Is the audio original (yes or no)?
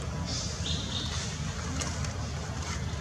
yes